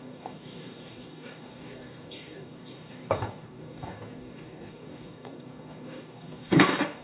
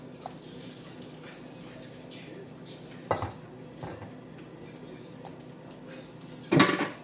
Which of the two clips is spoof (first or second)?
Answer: first